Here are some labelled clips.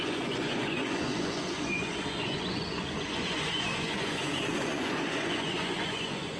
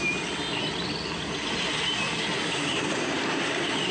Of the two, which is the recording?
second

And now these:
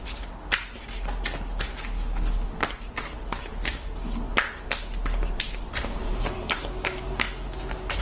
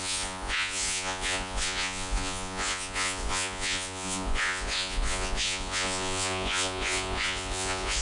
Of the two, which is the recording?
first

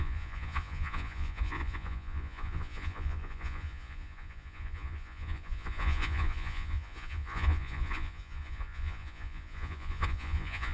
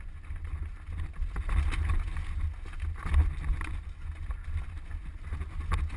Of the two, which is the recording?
second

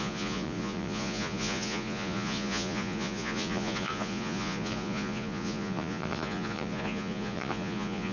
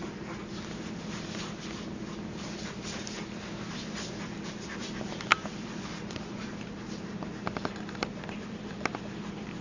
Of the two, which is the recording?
second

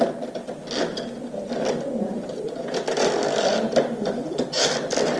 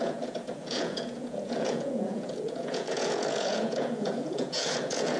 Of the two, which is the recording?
first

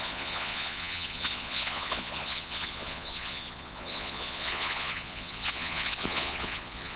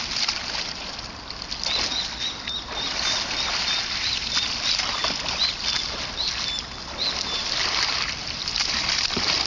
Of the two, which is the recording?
second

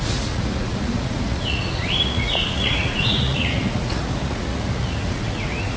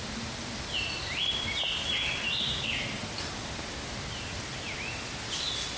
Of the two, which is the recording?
second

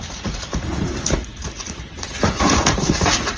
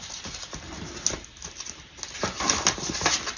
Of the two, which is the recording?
second